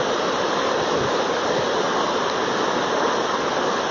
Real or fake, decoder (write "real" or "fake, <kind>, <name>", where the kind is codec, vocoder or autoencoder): real